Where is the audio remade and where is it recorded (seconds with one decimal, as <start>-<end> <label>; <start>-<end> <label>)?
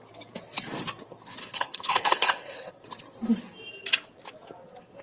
0.0-1.4 recorded; 1.4-2.7 remade; 2.7-5.0 recorded